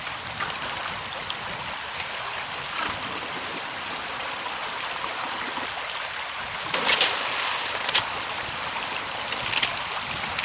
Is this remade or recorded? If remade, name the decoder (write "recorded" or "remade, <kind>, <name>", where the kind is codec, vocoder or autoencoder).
recorded